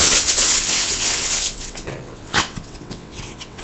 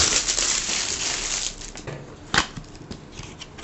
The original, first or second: second